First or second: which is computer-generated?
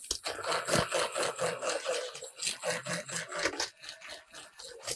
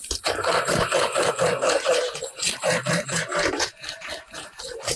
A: second